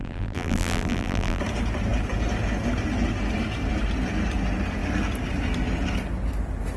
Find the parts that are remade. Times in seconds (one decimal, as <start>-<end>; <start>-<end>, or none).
0.0-1.4